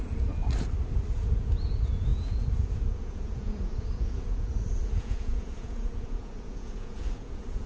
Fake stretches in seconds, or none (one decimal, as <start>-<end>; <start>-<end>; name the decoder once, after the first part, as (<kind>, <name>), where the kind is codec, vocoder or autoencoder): 0.0-0.4 (vocoder, Vocos); 1.1-7.7